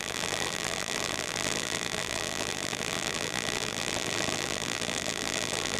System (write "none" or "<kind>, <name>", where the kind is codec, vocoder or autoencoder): vocoder, BigVGAN v2